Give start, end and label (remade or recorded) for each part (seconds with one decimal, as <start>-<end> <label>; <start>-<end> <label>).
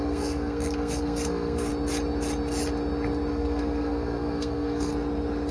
0.0-1.7 remade; 1.7-3.3 recorded; 3.3-4.9 remade; 4.9-5.5 recorded